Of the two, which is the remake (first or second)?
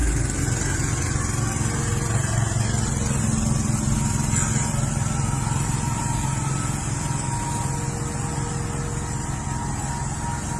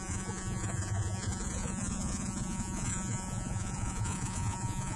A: second